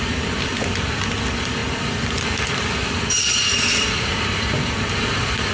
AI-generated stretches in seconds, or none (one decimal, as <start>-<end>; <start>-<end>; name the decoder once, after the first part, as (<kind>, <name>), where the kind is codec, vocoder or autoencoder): none

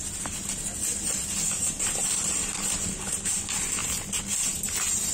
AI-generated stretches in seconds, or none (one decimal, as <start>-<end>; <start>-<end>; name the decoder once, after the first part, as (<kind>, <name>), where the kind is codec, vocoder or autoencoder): 2.0-2.8 (vocoder, BigVGAN v2)

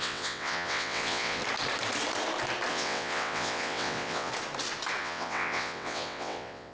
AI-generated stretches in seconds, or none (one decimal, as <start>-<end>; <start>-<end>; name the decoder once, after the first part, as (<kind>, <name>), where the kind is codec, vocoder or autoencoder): 0.0-1.4 (vocoder, WaveNeXt); 2.7-4.3; 5.0-6.7

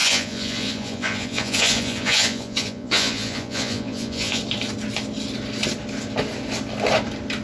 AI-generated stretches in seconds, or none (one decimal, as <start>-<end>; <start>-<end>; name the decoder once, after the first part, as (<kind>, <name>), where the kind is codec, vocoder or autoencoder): 0.0-4.4 (vocoder, Vocos)

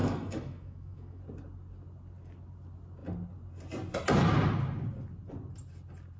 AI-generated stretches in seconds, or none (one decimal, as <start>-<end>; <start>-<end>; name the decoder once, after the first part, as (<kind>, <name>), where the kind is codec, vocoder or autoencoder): 0.0-1.2 (autoencoder, DAC-VAE)

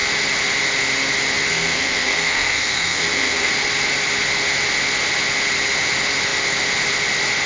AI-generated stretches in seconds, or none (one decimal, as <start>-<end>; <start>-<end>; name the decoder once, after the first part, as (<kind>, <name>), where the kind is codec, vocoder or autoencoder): 1.5-3.5 (codec, SNAC)